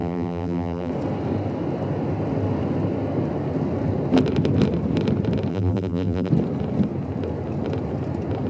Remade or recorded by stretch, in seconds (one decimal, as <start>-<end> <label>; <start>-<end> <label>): 0.0-0.9 remade; 0.9-5.5 recorded; 5.5-6.3 remade; 6.3-8.5 recorded